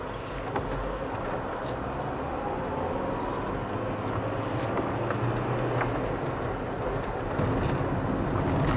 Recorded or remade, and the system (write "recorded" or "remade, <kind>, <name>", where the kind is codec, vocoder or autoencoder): recorded